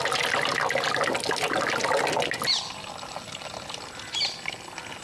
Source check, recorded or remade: recorded